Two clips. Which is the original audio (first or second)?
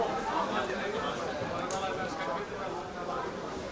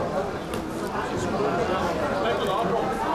second